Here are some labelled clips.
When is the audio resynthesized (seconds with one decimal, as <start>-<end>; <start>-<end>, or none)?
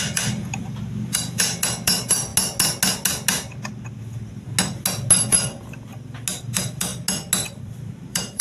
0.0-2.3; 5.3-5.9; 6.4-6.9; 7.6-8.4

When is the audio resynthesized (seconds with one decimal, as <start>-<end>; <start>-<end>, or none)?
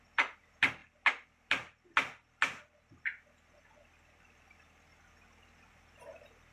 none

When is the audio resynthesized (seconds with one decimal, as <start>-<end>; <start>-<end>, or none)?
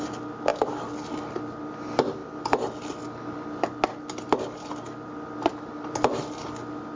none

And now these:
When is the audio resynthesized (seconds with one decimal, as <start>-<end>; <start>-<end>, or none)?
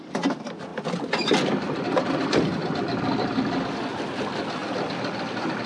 0.7-2.1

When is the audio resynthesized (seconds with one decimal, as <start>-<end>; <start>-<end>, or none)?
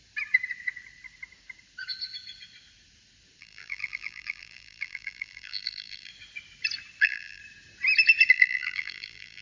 3.4-6.1; 7.0-7.4; 8.3-9.4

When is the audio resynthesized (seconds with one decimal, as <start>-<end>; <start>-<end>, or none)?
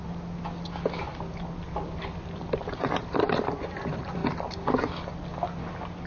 1.9-4.2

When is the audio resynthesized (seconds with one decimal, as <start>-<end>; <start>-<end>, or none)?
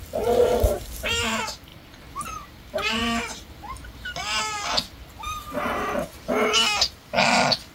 1.7-2.5